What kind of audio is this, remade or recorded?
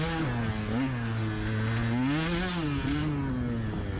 recorded